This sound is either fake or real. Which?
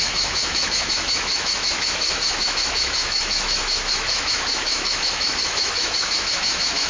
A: fake